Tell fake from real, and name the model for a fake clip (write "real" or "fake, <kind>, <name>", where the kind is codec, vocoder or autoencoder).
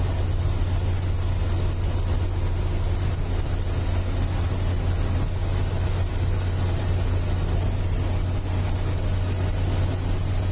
real